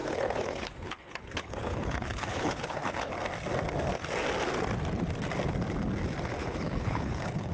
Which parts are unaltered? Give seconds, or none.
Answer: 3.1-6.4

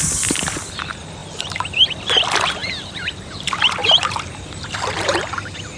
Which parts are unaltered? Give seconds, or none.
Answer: 0.0-1.2; 2.2-2.6; 3.3-3.8; 5.2-5.8

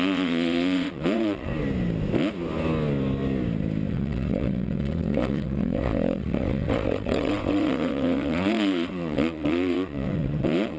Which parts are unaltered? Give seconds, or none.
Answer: 1.5-3.9